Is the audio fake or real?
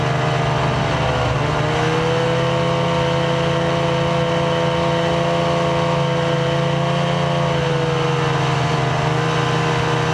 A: real